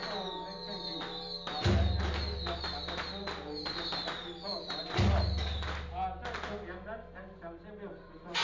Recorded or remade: recorded